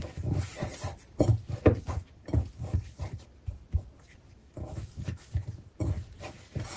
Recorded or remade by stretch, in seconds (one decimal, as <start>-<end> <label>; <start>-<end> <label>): 0.0-0.5 remade; 0.5-4.4 recorded; 4.4-5.3 remade; 5.3-6.8 recorded